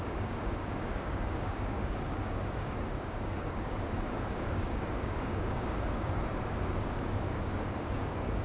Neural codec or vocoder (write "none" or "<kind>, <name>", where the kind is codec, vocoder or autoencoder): codec, DAC